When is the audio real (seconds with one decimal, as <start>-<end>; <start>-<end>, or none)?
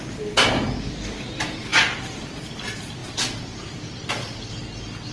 0.0-5.1